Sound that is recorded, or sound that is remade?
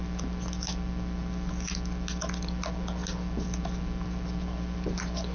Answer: recorded